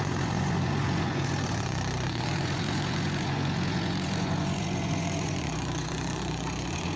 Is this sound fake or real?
fake